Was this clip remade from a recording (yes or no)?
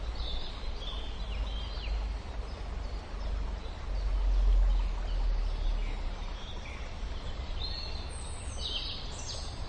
no